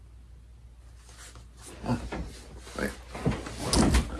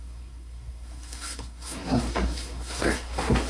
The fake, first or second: second